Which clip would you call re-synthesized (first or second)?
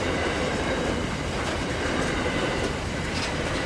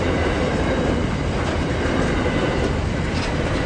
first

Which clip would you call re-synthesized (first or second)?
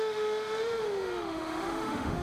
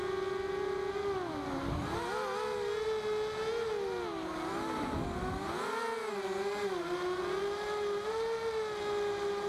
first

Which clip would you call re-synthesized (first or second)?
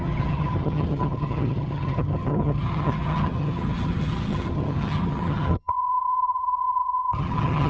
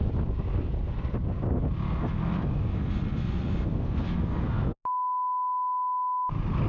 first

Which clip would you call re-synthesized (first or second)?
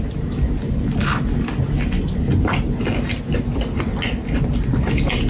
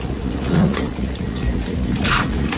second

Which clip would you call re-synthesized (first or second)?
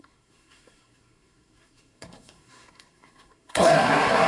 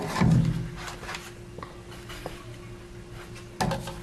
first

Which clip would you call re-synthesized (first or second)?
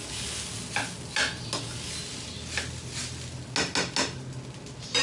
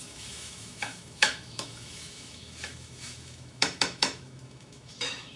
second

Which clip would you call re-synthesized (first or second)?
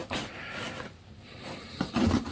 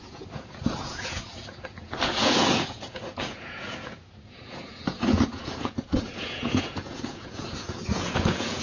second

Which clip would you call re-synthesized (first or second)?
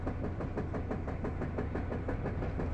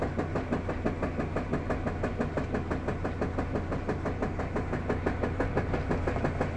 first